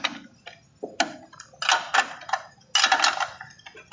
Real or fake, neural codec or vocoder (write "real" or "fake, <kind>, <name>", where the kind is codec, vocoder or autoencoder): real